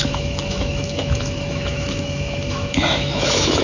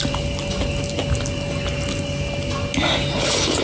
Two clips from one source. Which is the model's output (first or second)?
first